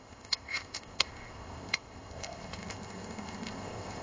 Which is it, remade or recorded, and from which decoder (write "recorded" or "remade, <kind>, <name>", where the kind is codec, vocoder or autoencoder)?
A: remade, codec, ZipCodec